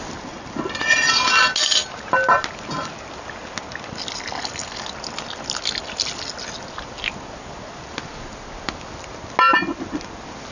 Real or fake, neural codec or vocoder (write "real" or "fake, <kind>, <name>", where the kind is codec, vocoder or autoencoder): real